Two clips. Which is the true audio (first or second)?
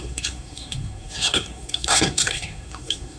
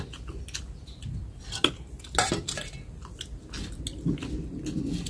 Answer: second